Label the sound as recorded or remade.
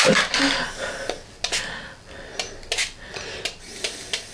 recorded